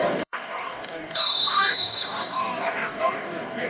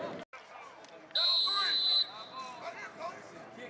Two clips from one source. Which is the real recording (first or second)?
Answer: second